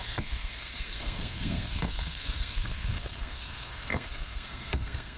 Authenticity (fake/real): fake